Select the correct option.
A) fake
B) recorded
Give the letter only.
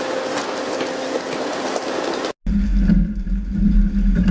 B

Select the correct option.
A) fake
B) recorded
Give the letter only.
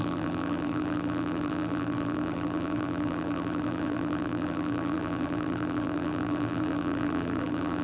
A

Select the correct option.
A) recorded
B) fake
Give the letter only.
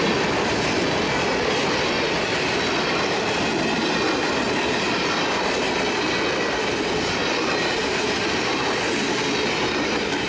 A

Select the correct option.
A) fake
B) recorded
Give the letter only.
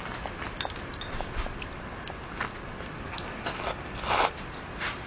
B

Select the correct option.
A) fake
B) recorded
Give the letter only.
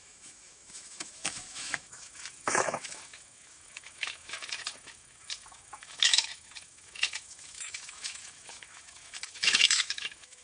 A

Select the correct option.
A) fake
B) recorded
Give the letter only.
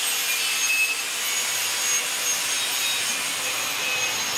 B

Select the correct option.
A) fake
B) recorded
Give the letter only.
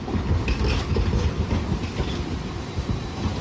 B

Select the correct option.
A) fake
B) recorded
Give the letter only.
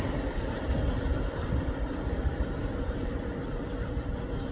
A